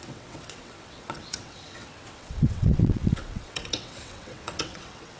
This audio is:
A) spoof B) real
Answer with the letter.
A